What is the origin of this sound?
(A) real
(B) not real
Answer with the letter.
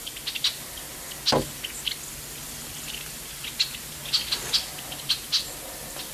A